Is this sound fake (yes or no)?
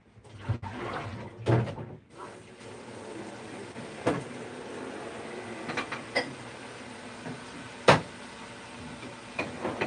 no